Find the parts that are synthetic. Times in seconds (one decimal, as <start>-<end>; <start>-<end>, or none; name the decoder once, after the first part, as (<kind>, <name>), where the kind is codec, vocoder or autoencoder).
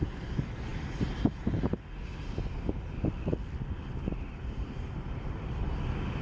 none